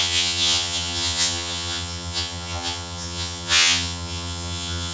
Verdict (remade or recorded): remade